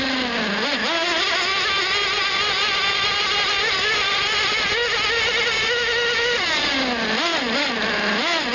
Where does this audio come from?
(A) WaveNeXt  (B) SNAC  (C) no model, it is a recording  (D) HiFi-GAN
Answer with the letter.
C